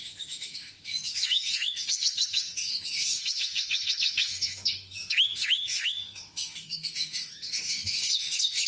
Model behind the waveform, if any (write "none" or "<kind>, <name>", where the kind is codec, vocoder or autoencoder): autoencoder, DAC-VAE